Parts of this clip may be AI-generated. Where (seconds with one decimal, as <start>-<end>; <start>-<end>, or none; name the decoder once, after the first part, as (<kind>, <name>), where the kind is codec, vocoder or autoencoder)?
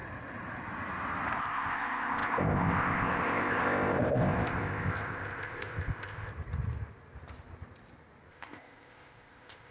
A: 1.4-6.3 (codec, ZipCodec); 8.3-9.7